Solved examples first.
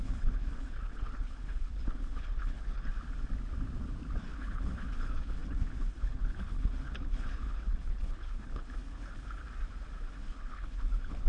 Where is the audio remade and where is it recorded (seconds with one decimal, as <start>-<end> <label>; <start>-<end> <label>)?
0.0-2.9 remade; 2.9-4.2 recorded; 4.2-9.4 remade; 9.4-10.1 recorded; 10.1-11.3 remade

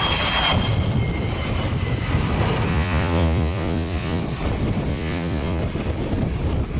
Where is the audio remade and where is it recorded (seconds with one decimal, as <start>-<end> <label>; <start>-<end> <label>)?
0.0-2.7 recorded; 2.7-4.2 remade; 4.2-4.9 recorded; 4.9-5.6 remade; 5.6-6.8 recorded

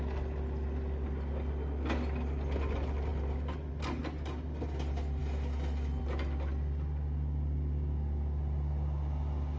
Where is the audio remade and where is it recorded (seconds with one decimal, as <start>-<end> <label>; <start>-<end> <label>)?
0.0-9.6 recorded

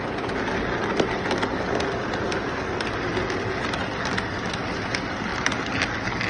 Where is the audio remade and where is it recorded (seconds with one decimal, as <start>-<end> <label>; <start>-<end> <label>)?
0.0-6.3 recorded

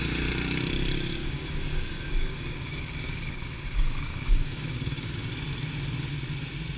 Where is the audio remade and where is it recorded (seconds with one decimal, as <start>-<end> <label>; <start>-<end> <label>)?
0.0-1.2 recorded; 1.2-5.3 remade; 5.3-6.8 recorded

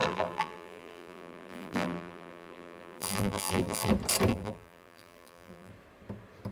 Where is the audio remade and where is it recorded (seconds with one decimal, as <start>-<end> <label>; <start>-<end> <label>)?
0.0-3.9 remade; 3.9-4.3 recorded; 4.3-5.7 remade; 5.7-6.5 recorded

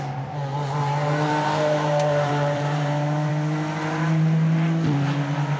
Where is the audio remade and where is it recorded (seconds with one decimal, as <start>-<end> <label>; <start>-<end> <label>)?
0.0-0.5 recorded; 0.5-3.3 remade; 3.3-5.6 recorded